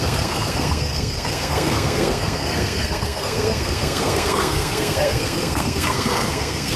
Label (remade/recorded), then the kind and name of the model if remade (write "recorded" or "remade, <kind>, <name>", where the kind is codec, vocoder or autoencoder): remade, codec, SNAC